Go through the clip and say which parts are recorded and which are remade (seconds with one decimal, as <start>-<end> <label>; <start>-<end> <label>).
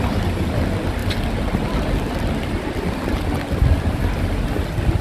0.0-5.0 recorded